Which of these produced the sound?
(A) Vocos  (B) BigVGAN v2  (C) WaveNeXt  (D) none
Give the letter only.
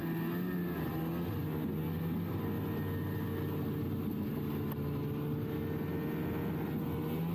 D